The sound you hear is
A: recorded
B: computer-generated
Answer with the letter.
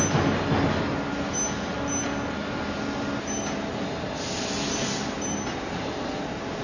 A